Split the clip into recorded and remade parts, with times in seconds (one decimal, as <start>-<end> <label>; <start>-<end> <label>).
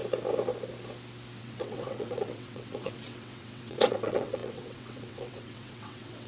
0.0-1.4 recorded; 1.4-6.3 remade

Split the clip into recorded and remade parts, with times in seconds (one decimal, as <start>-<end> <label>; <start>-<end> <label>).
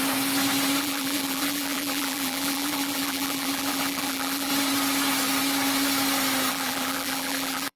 0.0-0.8 recorded; 0.8-4.5 remade; 4.5-6.5 recorded; 6.5-7.8 remade